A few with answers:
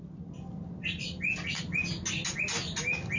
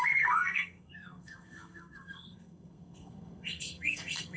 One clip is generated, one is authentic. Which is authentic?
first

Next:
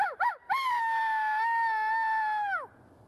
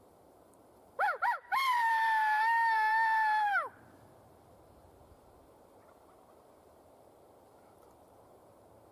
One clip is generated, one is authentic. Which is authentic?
first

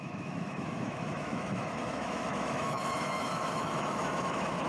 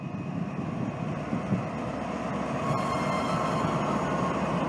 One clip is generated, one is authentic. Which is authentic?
second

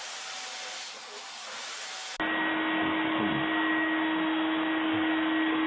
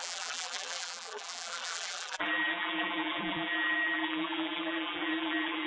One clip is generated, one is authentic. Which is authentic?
first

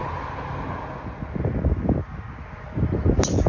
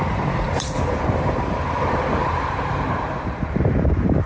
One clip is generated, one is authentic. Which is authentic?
first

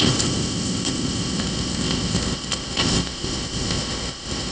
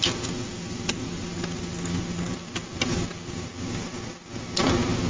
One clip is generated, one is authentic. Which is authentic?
second